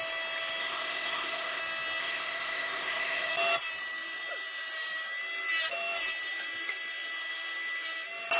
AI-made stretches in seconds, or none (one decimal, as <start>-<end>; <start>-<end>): 0.6-1.6; 2.0-3.3